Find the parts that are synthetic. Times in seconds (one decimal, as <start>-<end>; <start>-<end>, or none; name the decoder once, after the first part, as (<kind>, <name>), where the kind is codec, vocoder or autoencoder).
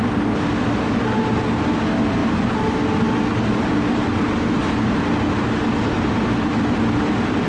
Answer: none